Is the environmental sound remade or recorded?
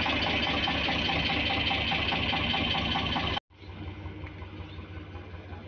recorded